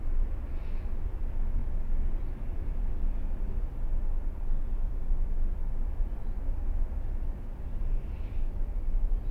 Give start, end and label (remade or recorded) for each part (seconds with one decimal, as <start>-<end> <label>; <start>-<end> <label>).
0.0-9.3 recorded

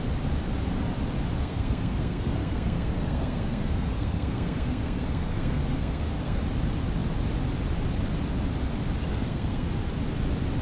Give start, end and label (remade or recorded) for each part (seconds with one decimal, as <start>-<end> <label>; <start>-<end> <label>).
0.0-1.4 recorded; 1.4-6.4 remade; 6.4-9.1 recorded; 9.1-9.7 remade; 9.7-10.6 recorded

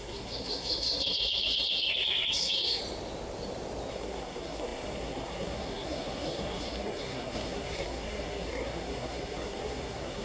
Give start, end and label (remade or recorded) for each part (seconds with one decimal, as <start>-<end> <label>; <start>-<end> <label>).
0.0-2.8 remade; 2.8-3.9 recorded; 3.9-10.2 remade

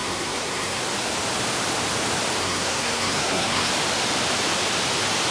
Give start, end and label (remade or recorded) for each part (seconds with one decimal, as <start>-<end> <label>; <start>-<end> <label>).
0.0-0.8 remade; 0.8-2.4 recorded; 2.4-3.7 remade; 3.7-5.3 recorded